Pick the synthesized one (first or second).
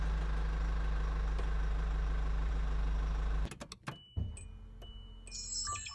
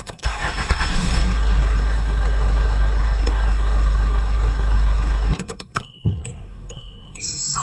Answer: second